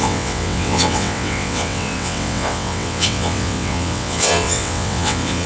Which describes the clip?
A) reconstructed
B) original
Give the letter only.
A